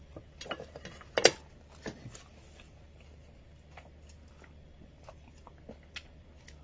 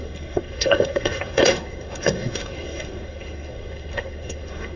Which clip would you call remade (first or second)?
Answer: second